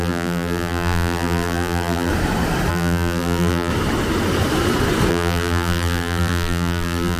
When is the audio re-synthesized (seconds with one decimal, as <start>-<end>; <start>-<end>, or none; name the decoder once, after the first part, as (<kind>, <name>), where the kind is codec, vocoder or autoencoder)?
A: 0.0-2.1 (vocoder, BigVGAN v2); 2.7-3.7; 5.1-7.2